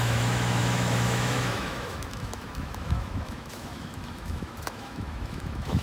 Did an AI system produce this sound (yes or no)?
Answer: yes